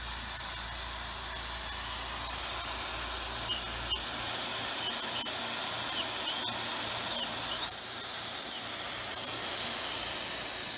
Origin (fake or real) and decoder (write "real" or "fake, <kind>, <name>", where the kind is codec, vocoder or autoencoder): real